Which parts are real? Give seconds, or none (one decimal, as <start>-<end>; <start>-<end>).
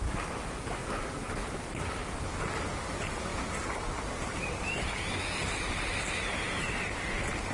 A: 0.8-2.4; 3.3-6.9